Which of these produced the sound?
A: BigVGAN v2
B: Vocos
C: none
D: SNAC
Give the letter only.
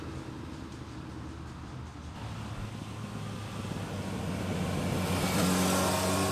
C